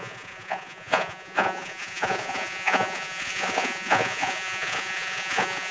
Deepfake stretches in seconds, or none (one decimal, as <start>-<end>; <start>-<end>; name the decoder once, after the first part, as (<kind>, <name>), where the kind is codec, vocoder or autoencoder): 0.0-5.7 (vocoder, Vocos)

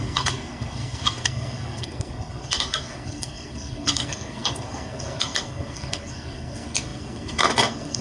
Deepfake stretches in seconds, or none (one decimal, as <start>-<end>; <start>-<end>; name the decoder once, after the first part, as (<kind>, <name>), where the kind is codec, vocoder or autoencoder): 0.0-8.0 (codec, SNAC)